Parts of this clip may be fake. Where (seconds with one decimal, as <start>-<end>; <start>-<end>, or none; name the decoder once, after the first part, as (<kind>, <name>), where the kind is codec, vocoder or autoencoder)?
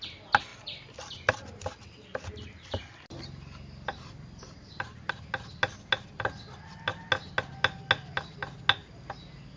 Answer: none